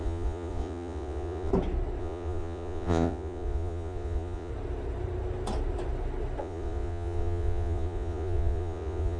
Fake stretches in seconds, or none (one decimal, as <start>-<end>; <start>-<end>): 0.0-1.5; 2.0-4.5; 6.4-9.2